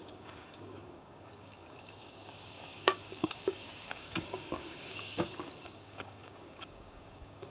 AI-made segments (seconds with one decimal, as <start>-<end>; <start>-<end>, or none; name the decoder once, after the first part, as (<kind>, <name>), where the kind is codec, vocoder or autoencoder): 0.0-7.5 (codec, DAC)